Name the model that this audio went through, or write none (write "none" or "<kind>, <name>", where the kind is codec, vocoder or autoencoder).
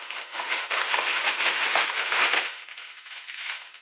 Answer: autoencoder, DAC-VAE